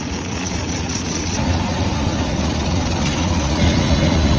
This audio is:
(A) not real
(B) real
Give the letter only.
A